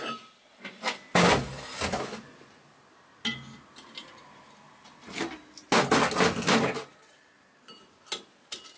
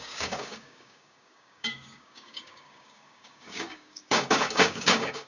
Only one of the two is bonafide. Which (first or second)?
first